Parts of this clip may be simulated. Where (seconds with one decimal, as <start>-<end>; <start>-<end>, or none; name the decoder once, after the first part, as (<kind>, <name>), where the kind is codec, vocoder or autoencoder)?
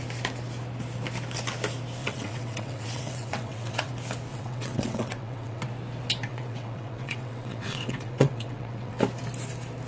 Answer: 2.0-3.9 (vocoder, WaveNeXt); 4.3-5.6; 6.3-8.9